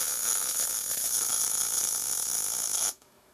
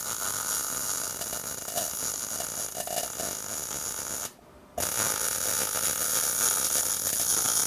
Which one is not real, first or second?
first